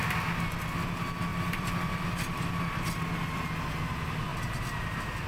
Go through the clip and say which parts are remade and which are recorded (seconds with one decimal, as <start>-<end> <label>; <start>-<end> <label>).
0.0-1.3 recorded; 1.3-3.5 remade; 3.5-4.3 recorded; 4.3-4.8 remade; 4.8-5.3 recorded